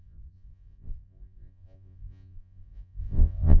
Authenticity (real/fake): fake